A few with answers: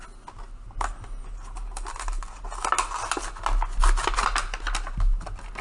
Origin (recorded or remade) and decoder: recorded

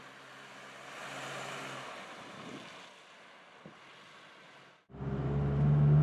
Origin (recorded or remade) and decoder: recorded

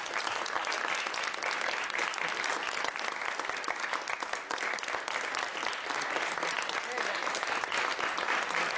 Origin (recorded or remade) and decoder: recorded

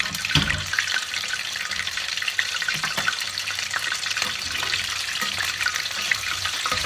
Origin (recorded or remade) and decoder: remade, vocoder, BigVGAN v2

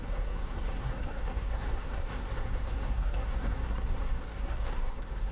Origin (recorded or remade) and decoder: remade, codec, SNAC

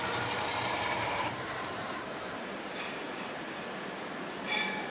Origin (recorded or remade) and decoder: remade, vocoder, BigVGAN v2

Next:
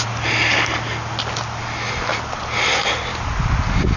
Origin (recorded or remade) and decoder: recorded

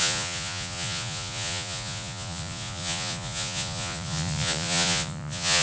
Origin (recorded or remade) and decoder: remade, vocoder, Vocos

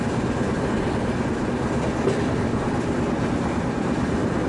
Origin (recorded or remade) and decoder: recorded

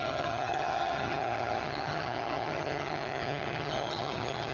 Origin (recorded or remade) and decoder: remade, vocoder, HiFi-GAN